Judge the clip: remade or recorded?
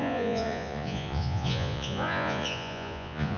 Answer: remade